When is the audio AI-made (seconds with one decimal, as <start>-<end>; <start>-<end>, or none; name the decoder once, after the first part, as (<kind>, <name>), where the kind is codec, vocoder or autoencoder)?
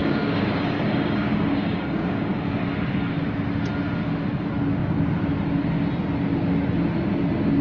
0.0-2.6 (codec, DAC)